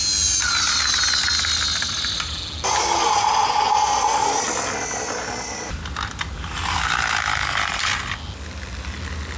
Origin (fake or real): real